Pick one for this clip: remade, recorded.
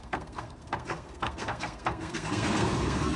remade